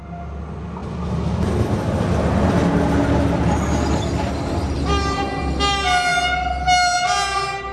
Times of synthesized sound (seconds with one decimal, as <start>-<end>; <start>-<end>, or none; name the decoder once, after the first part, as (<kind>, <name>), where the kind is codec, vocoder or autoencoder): none